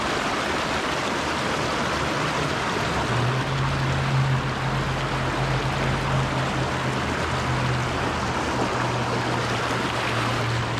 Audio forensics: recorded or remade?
recorded